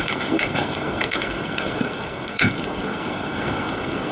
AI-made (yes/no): yes